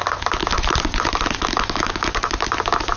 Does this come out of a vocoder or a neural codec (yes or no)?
no